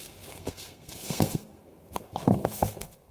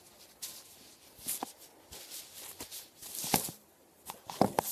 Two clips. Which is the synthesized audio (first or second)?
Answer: first